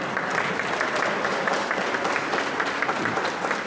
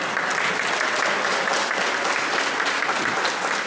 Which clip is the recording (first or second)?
second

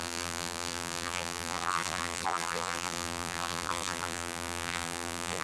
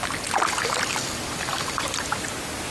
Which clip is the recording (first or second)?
second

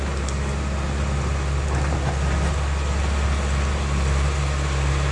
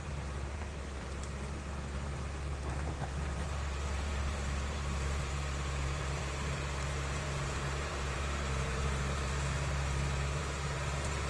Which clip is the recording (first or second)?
first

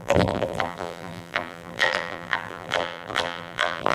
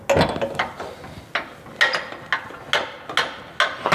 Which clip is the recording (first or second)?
second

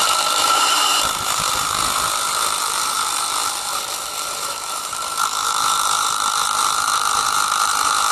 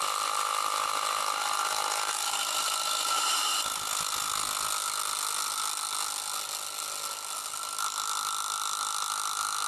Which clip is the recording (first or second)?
second